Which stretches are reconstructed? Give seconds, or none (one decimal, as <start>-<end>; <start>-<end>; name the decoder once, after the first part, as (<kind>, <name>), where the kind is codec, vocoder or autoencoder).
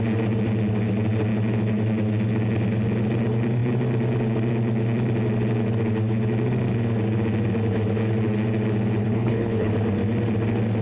9.0-9.7 (codec, HILCodec)